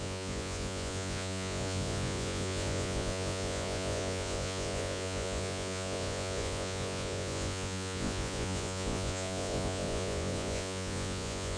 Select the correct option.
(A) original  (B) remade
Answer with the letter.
B